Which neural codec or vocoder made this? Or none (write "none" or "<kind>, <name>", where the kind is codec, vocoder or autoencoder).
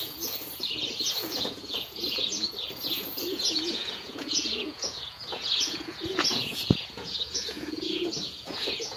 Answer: vocoder, Vocos